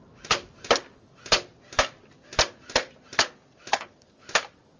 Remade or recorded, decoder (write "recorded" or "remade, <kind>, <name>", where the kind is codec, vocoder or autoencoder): recorded